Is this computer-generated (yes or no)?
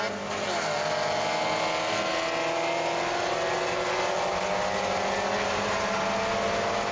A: no